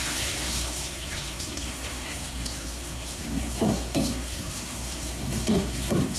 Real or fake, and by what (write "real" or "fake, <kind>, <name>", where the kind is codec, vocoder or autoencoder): fake, codec, SNAC